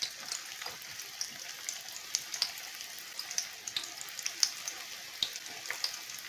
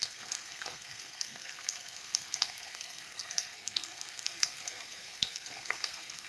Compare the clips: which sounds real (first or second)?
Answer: first